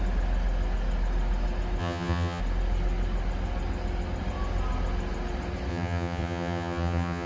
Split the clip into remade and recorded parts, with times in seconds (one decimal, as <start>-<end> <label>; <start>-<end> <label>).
0.0-1.8 recorded; 1.8-2.4 remade; 2.4-5.7 recorded; 5.7-7.3 remade